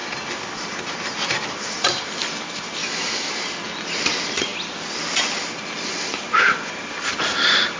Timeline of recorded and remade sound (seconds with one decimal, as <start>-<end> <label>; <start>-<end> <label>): 0.0-2.8 recorded; 2.8-3.3 remade; 3.3-7.8 recorded